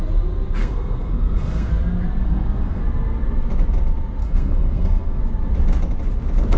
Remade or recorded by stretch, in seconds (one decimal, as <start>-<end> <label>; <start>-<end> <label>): 0.0-0.6 recorded; 0.6-1.7 remade; 1.7-2.2 recorded; 2.2-2.8 remade; 2.8-4.2 recorded; 4.2-5.2 remade; 5.2-6.6 recorded